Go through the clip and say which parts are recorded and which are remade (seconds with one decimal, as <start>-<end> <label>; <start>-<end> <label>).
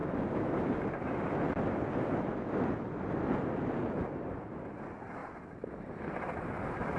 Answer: 0.0-7.0 recorded